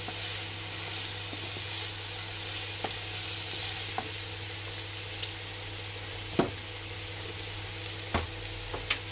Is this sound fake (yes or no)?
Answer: no